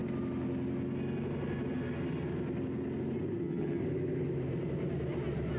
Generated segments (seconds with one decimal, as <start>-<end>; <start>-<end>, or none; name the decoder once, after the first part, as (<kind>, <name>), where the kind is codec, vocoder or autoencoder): 3.4-3.8 (vocoder, HiFi-GAN)